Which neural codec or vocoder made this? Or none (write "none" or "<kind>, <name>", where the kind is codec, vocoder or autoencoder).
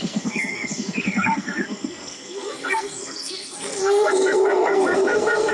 codec, SNAC